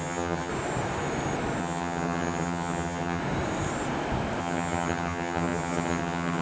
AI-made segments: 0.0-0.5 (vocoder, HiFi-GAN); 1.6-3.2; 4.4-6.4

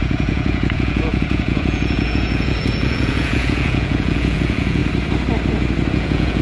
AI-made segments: 0.0-4.8 (vocoder, Vocos); 5.9-6.4

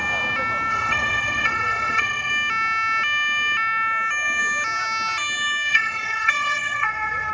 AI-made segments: 0.7-2.3 (vocoder, WaveNeXt); 5.7-7.3

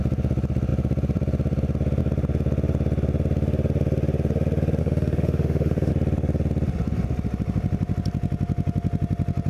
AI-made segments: 4.8-5.9 (autoencoder, DAC-VAE)

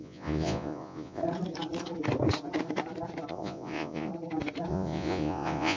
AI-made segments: 0.0-1.2 (vocoder, Vocos); 3.3-4.1; 4.7-5.8

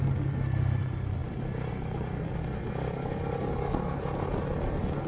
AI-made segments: none

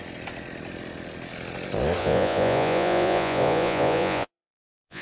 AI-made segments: 2.0-5.0 (vocoder, Vocos)